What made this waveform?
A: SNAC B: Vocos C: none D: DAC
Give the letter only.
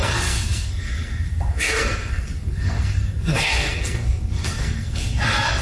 A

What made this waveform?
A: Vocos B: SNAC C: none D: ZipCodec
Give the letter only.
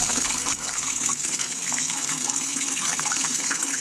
B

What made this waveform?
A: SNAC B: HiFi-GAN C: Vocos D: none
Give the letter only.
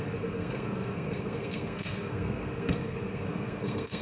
A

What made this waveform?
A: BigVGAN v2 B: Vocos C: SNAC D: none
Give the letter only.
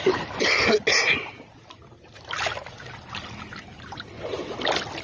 D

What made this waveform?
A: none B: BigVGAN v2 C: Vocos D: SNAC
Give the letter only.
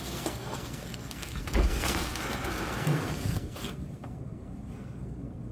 D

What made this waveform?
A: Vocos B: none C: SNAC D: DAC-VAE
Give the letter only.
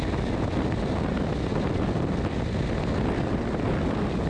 B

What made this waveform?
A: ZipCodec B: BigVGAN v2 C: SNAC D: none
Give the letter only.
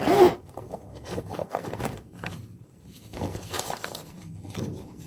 C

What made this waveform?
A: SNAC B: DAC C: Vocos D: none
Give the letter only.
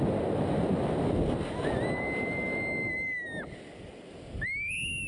D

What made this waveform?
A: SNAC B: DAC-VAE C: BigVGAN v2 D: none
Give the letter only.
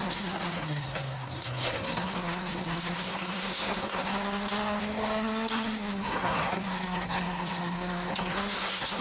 A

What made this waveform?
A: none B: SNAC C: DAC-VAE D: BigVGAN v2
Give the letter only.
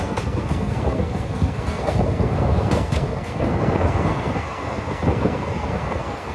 B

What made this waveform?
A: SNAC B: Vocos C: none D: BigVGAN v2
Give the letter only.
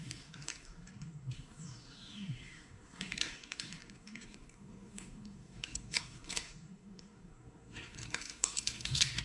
A